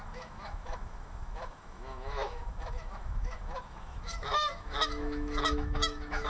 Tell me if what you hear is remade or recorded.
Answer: remade